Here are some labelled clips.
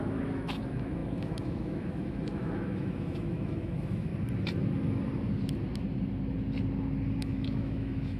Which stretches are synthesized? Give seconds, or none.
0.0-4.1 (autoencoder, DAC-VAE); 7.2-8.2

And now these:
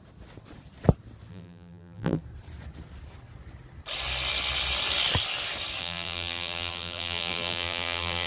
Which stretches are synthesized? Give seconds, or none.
1.3-2.2 (vocoder, BigVGAN v2); 5.8-8.3

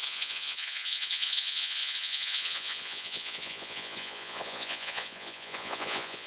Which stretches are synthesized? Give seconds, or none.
0.0-6.3 (vocoder, Vocos)

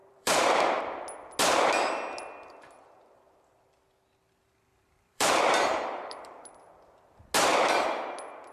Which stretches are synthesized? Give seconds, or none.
0.0-0.8 (vocoder, BigVGAN v2); 4.7-6.5

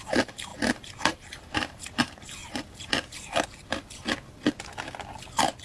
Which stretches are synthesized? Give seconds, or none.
0.0-0.5 (vocoder, BigVGAN v2); 1.1-2.4

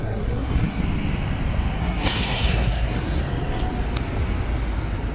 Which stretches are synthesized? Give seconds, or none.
0.0-0.8 (codec, SNAC); 1.8-3.2

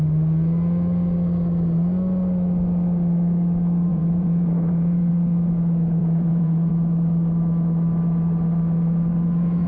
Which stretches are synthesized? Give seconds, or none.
3.9-5.1 (vocoder, Vocos); 6.0-6.7

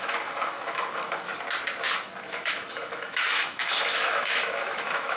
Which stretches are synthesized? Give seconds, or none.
0.0-1.3 (autoencoder, DAC-VAE); 2.3-5.2